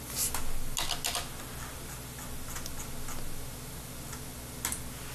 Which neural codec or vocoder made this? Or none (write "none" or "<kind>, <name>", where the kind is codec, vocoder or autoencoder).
none